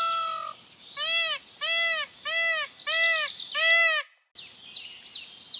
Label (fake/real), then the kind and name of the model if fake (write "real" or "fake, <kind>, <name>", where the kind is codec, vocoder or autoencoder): real